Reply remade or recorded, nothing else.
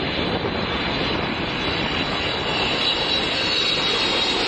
recorded